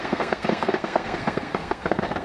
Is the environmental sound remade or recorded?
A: remade